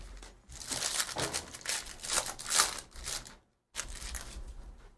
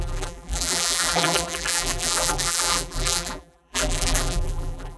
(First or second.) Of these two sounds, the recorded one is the first